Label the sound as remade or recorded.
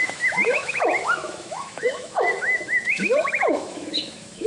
remade